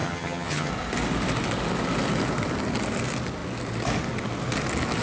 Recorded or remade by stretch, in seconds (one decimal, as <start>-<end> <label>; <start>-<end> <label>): 0.0-0.7 remade; 0.7-5.0 recorded